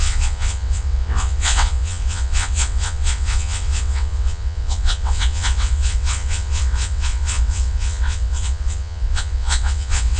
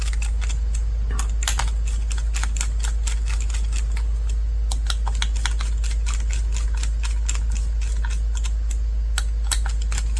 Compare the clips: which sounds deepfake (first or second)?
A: first